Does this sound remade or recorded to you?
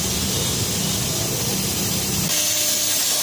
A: recorded